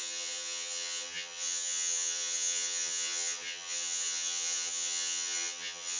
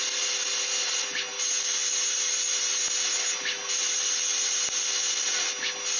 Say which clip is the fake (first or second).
first